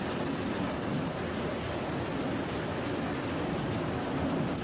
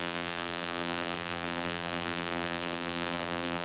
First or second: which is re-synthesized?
second